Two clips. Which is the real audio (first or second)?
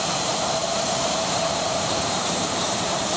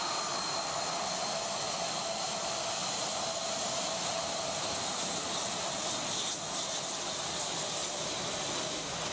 second